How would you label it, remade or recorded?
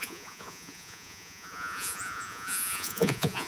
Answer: remade